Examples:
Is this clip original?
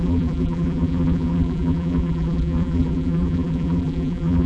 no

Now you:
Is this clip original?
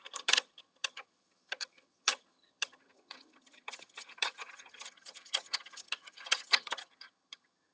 no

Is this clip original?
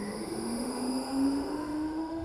no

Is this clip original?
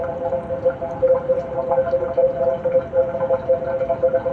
yes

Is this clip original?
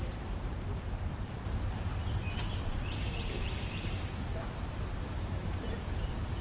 no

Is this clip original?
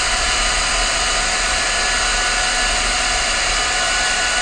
yes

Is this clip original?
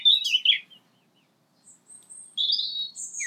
yes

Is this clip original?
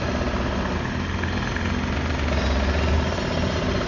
yes